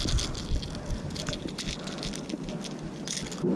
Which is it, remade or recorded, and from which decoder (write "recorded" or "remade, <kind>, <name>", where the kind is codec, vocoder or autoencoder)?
recorded